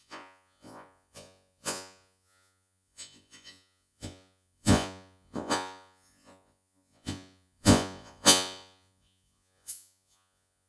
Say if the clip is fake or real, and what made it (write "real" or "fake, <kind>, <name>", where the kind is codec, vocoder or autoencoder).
fake, vocoder, Vocos